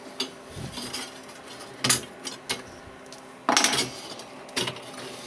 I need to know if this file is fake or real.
real